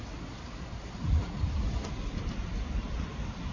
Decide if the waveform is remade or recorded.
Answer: recorded